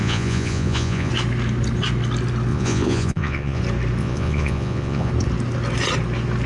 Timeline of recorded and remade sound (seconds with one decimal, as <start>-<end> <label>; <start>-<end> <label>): 0.0-1.1 remade; 1.1-2.5 recorded; 2.5-3.6 remade; 3.6-4.0 recorded; 4.0-5.1 remade; 5.1-6.5 recorded